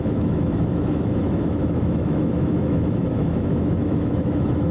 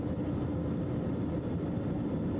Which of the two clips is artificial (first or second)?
first